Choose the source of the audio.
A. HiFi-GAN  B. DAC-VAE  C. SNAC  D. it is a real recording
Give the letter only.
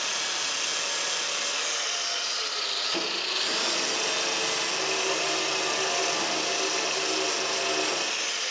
D